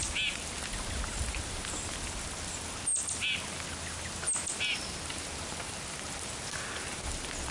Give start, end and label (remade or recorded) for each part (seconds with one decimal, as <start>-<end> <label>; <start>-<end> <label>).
0.0-7.5 recorded